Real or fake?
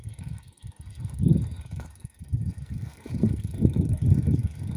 fake